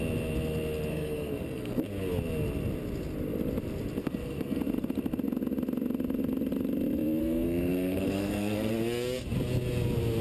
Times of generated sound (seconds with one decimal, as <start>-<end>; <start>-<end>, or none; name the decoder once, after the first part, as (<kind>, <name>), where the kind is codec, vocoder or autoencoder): 0.9-1.8 (codec, SNAC); 4.0-4.6; 7.2-8.7